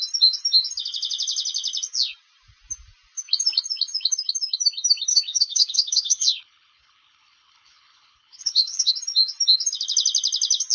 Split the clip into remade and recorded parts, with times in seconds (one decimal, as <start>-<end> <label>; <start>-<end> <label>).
0.0-5.1 recorded; 5.1-8.9 remade; 8.9-10.7 recorded

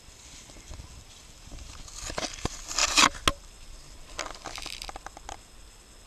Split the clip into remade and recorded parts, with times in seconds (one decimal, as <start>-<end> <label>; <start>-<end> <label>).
0.0-6.1 recorded

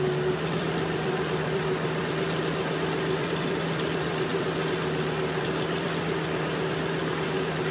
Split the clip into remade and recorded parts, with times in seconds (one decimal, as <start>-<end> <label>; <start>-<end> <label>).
0.0-7.7 remade

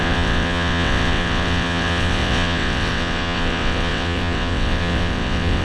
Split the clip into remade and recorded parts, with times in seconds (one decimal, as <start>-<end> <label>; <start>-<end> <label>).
0.0-5.6 remade